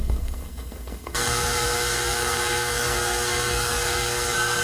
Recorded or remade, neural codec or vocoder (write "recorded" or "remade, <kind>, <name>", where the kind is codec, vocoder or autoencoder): remade, codec, SNAC